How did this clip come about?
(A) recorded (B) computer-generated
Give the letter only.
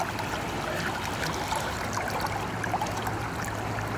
A